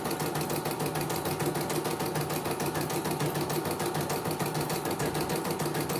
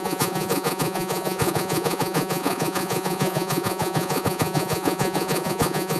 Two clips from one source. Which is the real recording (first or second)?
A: first